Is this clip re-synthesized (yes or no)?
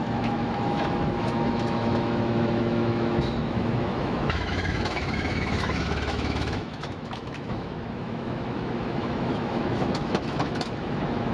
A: yes